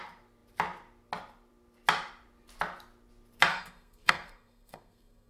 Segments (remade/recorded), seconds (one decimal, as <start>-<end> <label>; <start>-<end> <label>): 0.0-3.5 recorded; 3.5-5.3 remade